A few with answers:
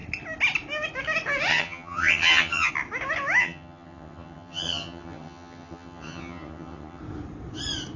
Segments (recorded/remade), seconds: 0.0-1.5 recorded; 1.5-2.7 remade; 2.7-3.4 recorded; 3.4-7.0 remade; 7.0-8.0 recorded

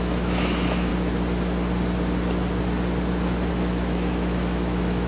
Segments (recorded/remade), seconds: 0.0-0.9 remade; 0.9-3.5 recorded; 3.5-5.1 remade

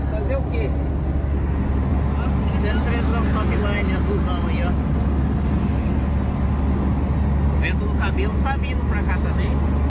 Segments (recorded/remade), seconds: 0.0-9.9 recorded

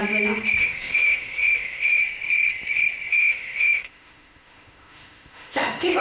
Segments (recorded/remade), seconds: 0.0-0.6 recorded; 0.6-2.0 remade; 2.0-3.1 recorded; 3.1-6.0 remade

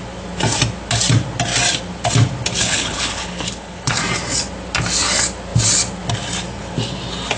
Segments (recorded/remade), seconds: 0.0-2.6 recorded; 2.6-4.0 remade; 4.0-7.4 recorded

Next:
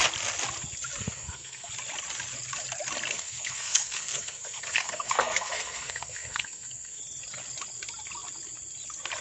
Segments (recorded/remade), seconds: 0.0-1.0 recorded; 1.0-1.7 remade; 1.7-3.1 recorded; 3.1-7.0 remade; 7.0-9.2 recorded

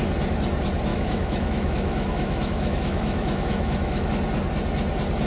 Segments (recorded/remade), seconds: 0.0-0.9 recorded; 0.9-4.1 remade; 4.1-5.3 recorded